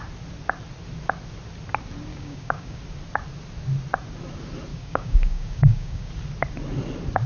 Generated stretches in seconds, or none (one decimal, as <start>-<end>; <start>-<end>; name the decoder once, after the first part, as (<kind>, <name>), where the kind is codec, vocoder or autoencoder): 2.1-2.8 (codec, DAC); 4.7-6.1